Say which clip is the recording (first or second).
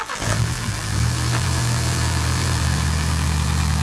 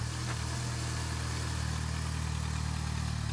second